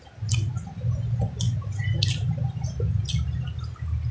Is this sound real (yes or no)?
yes